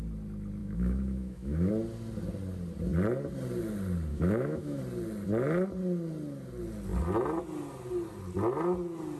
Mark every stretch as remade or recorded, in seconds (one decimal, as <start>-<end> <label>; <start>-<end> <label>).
0.0-0.6 recorded; 0.6-1.7 remade; 1.7-4.1 recorded; 4.1-4.8 remade; 4.8-9.2 recorded